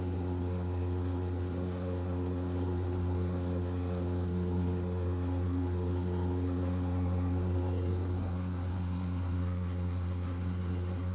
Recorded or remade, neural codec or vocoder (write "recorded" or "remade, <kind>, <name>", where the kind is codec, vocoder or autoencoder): remade, codec, SNAC